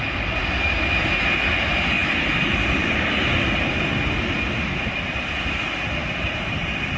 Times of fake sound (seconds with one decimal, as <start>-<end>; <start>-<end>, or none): 6.0-7.0